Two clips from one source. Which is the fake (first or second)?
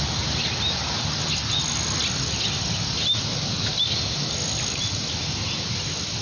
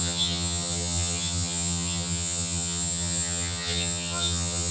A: second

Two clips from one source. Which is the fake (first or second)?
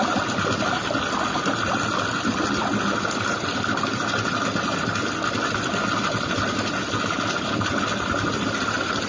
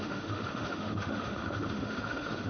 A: second